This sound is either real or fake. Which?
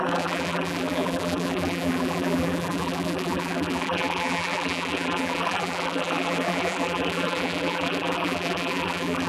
fake